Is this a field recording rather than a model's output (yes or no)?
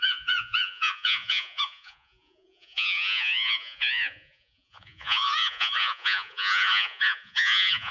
no